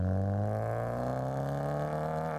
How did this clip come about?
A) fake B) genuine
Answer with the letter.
B